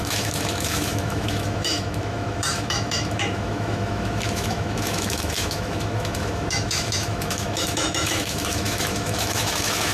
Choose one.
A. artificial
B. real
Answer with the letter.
A